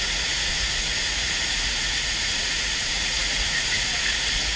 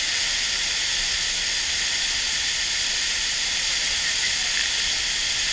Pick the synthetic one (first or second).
first